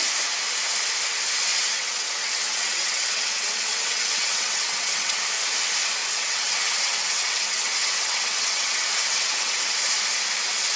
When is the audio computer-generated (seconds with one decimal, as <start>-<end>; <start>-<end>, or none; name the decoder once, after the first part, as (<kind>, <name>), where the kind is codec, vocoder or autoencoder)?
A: 1.5-5.2 (vocoder, WaveNeXt); 6.0-9.8